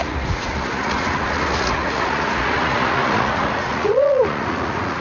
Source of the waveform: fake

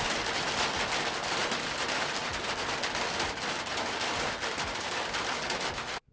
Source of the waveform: real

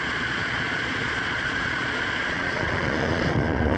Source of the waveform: fake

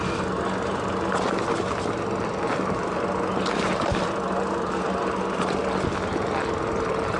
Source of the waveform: real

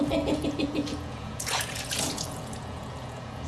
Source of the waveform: fake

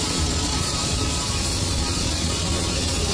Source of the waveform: fake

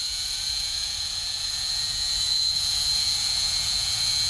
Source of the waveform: fake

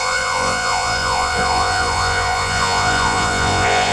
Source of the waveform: fake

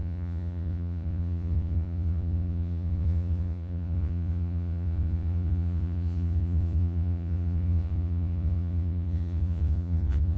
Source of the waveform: fake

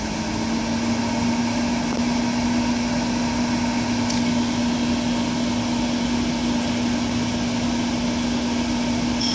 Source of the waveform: real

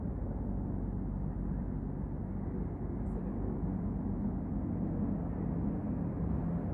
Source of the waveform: real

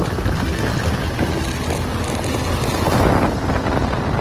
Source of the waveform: real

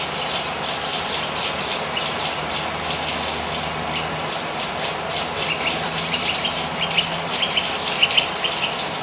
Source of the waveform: real